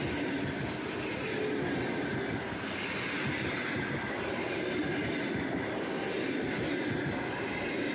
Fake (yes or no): no